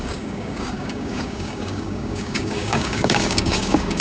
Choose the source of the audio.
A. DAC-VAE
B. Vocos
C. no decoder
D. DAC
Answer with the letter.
D